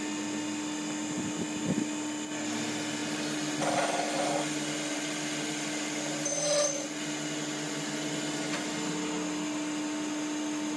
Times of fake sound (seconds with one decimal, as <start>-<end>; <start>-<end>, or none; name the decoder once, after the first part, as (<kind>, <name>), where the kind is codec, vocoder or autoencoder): none